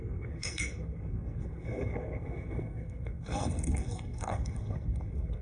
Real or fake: fake